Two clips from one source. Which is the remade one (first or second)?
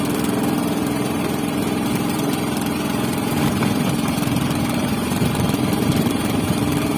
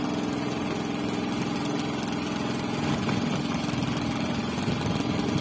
first